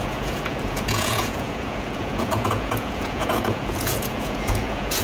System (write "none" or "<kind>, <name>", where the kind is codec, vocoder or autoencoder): vocoder, Vocos